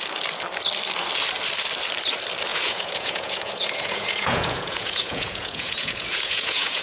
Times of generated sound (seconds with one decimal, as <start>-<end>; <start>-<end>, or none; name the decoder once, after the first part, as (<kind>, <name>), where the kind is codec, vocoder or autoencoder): 2.5-6.8 (vocoder, Vocos)